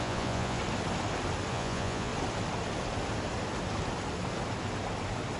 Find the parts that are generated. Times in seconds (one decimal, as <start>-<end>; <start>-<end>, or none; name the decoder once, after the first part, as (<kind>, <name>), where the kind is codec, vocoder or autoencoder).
0.0-0.6 (vocoder, Vocos); 1.5-2.1